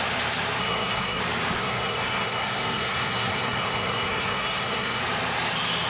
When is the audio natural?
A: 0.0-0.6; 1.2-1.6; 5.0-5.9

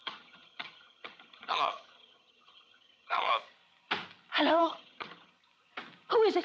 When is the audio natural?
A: 3.3-4.6; 5.3-6.4

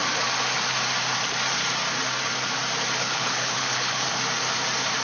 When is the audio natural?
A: 0.0-3.0; 4.2-5.0